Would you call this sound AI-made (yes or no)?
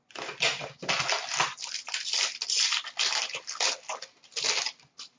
no